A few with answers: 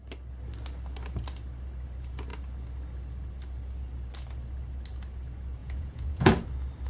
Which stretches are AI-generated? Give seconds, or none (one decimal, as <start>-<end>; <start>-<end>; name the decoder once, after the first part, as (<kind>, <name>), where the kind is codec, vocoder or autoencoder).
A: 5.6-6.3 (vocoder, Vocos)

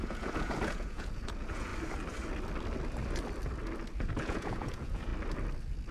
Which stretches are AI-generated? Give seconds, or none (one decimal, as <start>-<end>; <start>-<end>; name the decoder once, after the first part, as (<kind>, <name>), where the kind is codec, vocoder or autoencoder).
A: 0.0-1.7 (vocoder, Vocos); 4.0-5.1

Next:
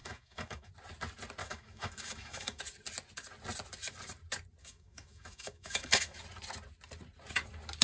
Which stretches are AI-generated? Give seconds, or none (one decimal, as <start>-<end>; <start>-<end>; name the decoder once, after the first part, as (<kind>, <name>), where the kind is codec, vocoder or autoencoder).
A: 0.0-0.7 (autoencoder, DAC-VAE); 1.4-2.6; 4.6-6.2

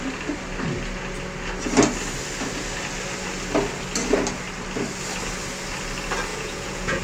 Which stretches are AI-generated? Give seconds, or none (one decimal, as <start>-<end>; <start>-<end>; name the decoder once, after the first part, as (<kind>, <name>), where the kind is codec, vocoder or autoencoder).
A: 6.3-7.0 (vocoder, Vocos)

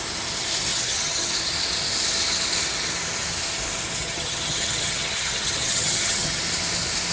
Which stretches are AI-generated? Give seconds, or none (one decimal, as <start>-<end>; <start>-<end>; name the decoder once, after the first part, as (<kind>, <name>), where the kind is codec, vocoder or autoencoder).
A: 0.7-1.3 (vocoder, HiFi-GAN); 4.0-6.4